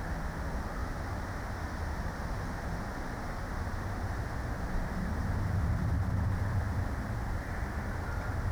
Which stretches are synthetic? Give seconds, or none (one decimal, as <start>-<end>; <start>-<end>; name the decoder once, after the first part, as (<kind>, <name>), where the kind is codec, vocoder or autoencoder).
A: none